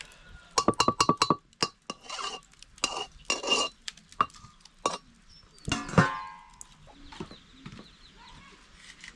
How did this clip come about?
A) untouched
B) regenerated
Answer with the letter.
A